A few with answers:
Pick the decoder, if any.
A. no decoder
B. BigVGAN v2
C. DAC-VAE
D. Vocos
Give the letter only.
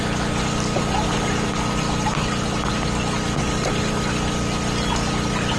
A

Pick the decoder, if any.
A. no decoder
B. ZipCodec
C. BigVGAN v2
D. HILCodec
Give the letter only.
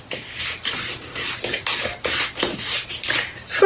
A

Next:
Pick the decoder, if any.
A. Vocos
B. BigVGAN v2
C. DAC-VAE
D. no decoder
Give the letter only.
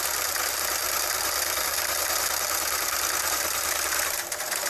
B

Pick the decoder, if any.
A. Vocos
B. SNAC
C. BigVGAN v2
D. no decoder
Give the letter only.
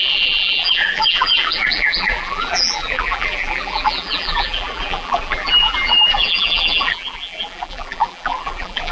C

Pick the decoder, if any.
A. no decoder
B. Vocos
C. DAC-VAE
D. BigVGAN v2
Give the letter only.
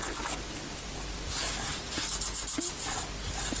A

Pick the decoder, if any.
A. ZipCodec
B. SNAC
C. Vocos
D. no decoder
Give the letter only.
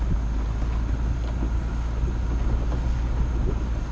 D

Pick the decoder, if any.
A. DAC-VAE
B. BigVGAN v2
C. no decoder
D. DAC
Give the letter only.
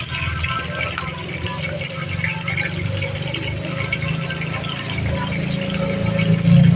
C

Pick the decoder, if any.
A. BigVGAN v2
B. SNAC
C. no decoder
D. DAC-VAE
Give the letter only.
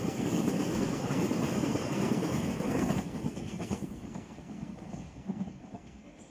B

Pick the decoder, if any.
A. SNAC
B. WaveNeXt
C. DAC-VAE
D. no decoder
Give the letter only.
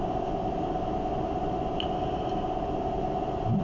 D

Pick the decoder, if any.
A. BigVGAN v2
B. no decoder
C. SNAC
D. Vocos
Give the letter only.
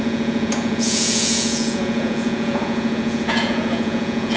D